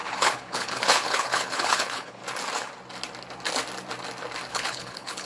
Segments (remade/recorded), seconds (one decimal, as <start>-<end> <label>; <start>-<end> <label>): 0.0-2.2 remade; 2.2-4.5 recorded; 4.5-5.3 remade